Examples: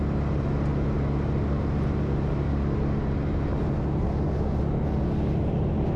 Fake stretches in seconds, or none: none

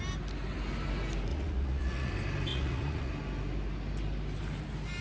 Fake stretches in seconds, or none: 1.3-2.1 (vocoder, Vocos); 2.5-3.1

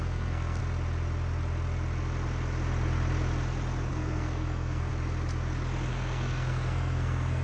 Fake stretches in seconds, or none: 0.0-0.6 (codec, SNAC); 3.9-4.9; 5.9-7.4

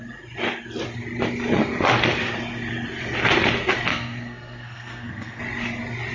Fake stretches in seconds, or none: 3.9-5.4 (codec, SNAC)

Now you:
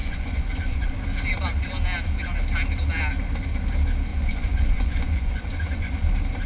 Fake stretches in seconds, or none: 0.0-1.0 (vocoder, Vocos); 4.1-5.9

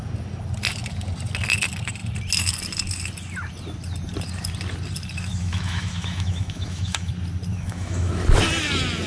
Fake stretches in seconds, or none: 5.3-7.1 (autoencoder, DAC-VAE); 7.5-8.1